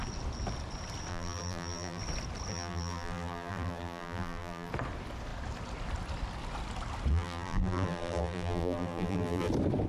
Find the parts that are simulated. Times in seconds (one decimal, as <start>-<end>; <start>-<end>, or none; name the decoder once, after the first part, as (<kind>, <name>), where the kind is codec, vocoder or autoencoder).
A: 1.1-2.0 (vocoder, BigVGAN v2); 2.5-4.7; 7.1-9.5